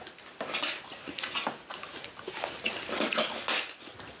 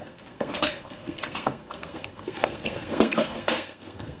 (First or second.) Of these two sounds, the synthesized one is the second